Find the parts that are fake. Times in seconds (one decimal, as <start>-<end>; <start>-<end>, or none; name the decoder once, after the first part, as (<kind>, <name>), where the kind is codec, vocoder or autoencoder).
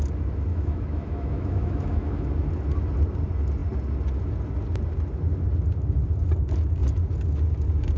0.5-2.3 (autoencoder, DAC-VAE)